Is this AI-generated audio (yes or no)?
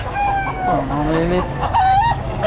yes